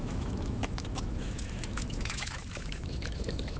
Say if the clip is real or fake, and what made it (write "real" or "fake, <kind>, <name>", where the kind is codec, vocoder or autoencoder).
fake, autoencoder, DAC-VAE